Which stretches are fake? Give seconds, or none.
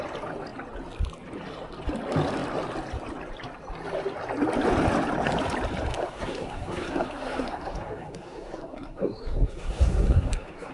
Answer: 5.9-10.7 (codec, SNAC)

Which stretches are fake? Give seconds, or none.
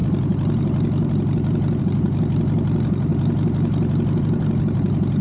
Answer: none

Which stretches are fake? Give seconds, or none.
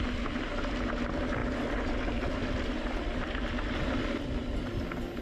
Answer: none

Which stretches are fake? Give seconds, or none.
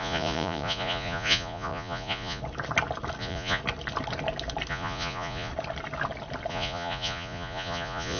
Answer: 0.0-2.4 (vocoder, Vocos); 3.2-3.6; 4.7-5.5; 6.5-8.2